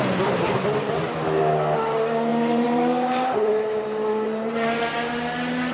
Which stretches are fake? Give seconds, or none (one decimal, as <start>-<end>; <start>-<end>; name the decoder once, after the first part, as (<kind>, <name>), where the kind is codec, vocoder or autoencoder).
2.3-4.8 (vocoder, BigVGAN v2)